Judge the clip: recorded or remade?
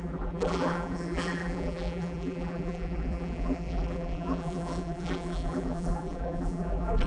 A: remade